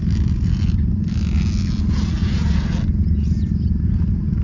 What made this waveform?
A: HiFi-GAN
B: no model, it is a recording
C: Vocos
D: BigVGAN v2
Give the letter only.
B